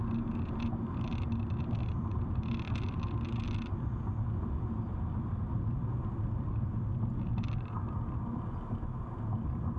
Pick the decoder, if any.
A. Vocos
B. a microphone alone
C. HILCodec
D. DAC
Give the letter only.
B